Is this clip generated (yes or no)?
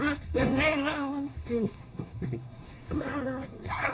yes